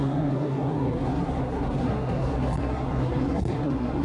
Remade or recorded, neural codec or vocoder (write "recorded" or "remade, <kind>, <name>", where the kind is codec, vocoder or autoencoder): remade, codec, SNAC